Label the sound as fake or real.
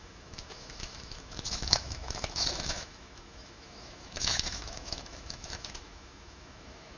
fake